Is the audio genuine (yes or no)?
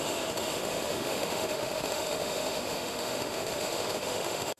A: no